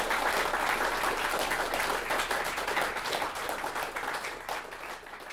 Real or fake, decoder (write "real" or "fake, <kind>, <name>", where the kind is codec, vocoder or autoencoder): fake, vocoder, BigVGAN v2